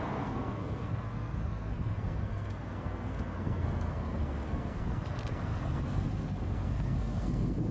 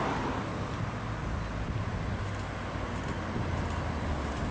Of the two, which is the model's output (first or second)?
first